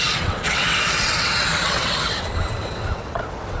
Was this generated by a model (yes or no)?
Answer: yes